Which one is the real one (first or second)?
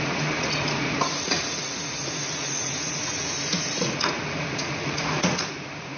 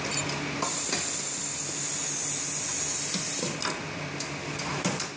second